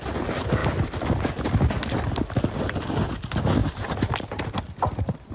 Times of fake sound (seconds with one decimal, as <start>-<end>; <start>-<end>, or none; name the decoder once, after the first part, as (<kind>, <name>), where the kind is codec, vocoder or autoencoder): none